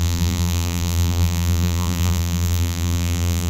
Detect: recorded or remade remade